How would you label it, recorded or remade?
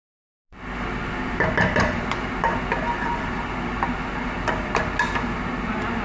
recorded